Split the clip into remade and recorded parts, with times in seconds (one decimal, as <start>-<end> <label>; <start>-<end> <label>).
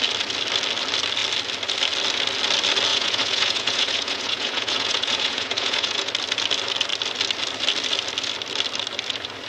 0.0-2.9 recorded; 2.9-6.1 remade; 6.1-9.5 recorded